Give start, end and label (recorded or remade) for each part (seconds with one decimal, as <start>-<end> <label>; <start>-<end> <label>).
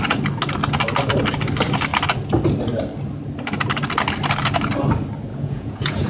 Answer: 0.0-5.3 recorded; 5.3-6.1 remade